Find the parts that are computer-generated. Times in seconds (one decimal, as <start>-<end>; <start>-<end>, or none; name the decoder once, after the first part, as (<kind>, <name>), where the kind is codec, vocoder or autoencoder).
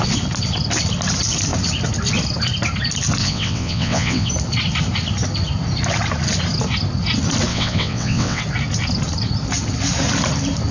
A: 3.2-4.3 (vocoder, WaveNeXt); 7.5-8.4